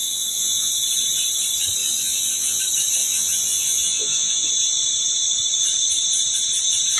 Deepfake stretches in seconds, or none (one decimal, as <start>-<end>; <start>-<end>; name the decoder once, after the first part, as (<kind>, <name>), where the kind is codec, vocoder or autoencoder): 0.0-0.7 (vocoder, Vocos); 1.8-2.6; 3.0-4.5